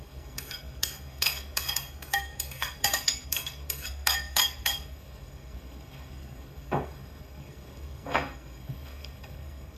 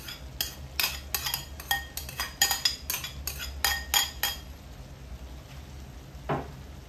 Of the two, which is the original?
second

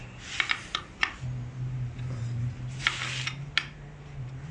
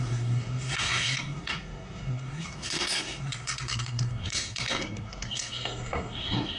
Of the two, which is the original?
first